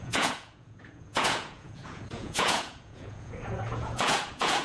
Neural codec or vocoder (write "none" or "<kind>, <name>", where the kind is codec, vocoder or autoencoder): vocoder, Vocos